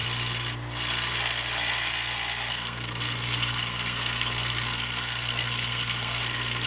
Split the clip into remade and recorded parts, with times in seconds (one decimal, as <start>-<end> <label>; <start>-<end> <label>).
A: 0.0-2.5 recorded; 2.5-6.7 remade